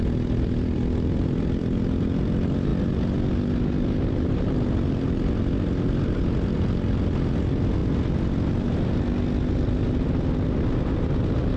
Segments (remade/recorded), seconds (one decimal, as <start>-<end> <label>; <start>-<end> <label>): 0.0-11.6 recorded